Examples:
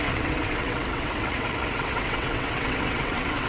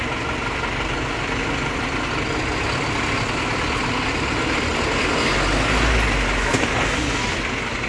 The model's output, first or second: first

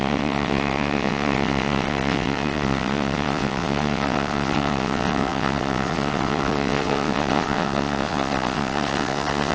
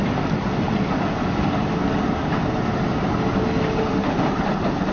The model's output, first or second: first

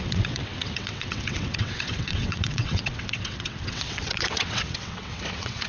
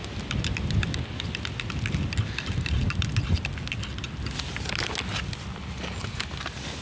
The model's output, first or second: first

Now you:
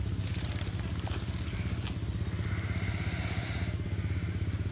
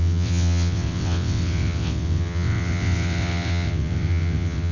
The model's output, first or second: second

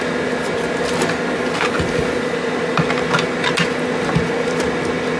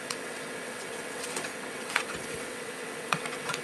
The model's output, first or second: second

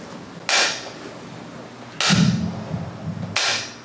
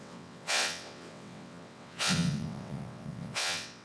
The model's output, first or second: second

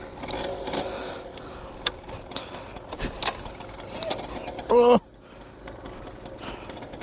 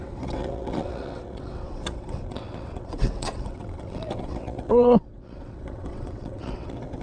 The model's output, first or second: second